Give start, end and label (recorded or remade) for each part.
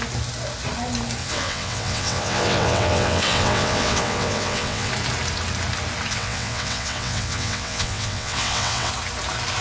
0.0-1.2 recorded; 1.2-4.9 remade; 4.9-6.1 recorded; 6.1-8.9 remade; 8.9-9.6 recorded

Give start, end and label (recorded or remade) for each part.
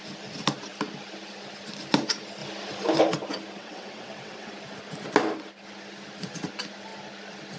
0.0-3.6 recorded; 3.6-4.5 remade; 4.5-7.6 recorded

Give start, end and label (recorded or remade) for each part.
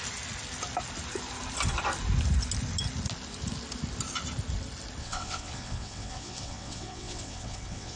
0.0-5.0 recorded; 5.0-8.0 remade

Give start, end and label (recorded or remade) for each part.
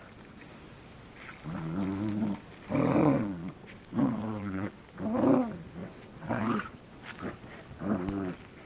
0.0-3.0 recorded; 3.0-4.7 remade; 4.7-5.8 recorded; 5.8-6.7 remade; 6.7-8.7 recorded